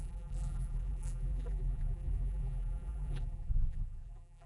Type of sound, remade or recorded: remade